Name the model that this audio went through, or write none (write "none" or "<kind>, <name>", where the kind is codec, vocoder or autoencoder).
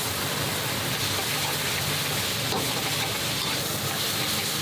none